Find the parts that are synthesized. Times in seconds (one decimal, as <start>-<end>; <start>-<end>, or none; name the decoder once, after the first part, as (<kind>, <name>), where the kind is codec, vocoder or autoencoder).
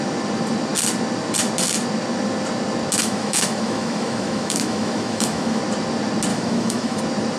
3.0-5.6 (autoencoder, DAC-VAE); 6.3-7.0